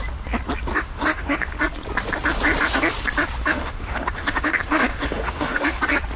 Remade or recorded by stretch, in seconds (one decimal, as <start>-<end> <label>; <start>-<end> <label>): 0.0-0.7 recorded; 0.7-1.5 remade; 1.5-3.5 recorded; 3.5-5.8 remade; 5.8-6.2 recorded